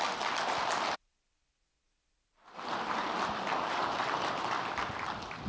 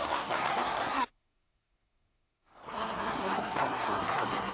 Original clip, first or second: first